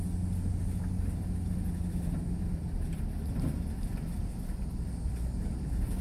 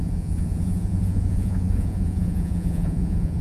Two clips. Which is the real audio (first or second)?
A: first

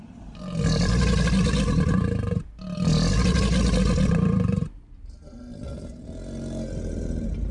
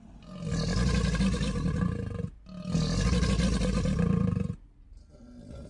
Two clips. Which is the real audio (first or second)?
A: second